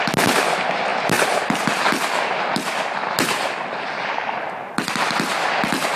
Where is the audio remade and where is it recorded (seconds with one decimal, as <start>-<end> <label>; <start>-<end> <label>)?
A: 0.0-6.0 recorded